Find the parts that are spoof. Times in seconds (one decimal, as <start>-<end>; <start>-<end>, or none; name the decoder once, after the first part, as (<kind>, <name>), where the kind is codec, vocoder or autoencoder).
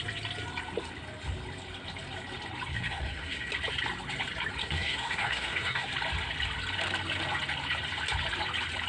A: 2.7-3.5 (codec, SNAC); 4.6-5.9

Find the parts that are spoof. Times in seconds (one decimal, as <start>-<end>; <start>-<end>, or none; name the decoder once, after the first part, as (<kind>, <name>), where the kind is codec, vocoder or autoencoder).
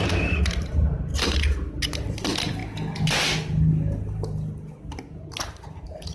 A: 0.0-1.1 (vocoder, BigVGAN v2); 2.1-2.6; 5.0-6.1